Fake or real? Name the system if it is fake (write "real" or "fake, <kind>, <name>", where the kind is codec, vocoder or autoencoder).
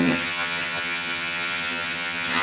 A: fake, vocoder, HiFi-GAN